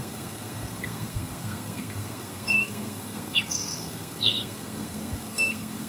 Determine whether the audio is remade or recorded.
remade